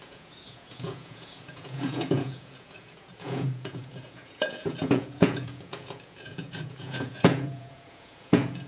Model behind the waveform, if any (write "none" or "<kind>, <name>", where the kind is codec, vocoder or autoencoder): vocoder, Vocos